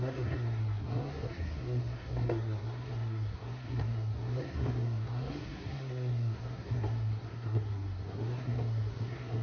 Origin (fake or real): fake